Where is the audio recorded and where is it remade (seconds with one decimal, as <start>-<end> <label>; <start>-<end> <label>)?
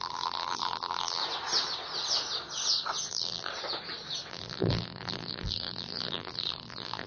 0.0-1.2 remade; 1.2-3.1 recorded; 3.1-3.5 remade; 3.5-4.3 recorded; 4.3-7.1 remade